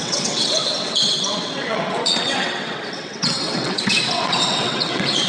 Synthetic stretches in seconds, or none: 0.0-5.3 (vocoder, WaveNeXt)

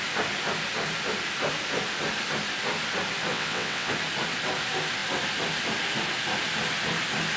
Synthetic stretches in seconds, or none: 3.3-3.9 (vocoder, WaveNeXt)